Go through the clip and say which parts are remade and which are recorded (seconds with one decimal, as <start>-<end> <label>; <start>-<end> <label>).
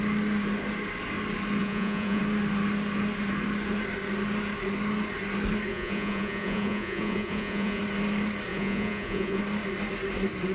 0.0-1.6 recorded; 1.6-2.2 remade; 2.2-5.7 recorded; 5.7-7.8 remade; 7.8-8.5 recorded; 8.5-9.4 remade; 9.4-10.5 recorded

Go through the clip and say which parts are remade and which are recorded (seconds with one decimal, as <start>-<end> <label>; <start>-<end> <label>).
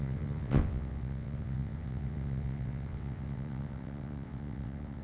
0.0-5.0 remade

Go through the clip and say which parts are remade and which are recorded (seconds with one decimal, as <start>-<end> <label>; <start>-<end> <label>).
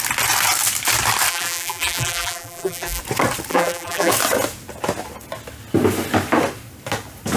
0.0-1.3 recorded; 1.3-3.0 remade; 3.0-3.5 recorded; 3.5-4.1 remade; 4.1-7.4 recorded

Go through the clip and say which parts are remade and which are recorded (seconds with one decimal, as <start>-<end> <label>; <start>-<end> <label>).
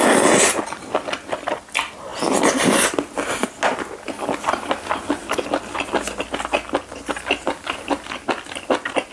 0.0-9.1 recorded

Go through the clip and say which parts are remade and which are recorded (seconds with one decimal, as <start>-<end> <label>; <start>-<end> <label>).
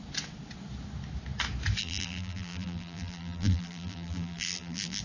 0.0-1.8 recorded; 1.8-5.0 remade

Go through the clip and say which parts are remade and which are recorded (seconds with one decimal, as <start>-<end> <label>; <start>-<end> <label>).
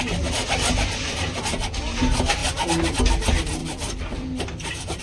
0.0-3.6 recorded; 3.6-5.0 remade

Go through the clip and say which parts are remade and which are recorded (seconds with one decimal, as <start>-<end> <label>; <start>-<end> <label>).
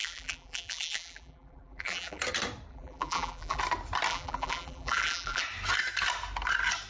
0.0-2.2 remade; 2.2-2.7 recorded; 2.7-3.6 remade; 3.6-4.1 recorded; 4.1-5.4 remade; 5.4-6.9 recorded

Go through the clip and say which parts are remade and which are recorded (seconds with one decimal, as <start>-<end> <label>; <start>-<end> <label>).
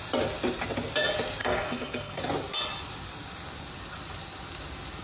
0.0-1.4 recorded; 1.4-2.2 remade; 2.2-5.0 recorded